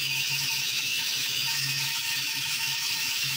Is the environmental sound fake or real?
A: fake